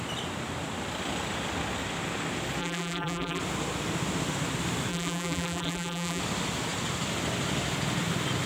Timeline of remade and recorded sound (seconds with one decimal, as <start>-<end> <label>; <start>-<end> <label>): 0.0-2.6 recorded; 2.6-3.4 remade; 3.4-4.9 recorded; 4.9-6.2 remade; 6.2-8.5 recorded